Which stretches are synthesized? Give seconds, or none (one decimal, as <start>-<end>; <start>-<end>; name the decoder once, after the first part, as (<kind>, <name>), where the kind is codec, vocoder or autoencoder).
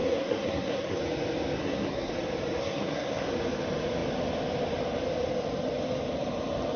0.0-1.0 (codec, SNAC); 1.6-2.1; 2.6-3.3